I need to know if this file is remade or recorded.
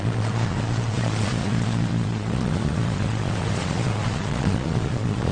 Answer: remade